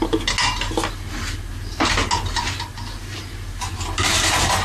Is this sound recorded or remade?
recorded